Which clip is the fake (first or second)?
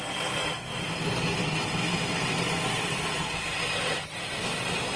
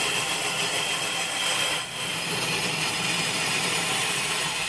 second